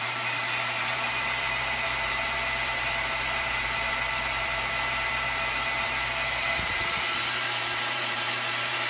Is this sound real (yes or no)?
no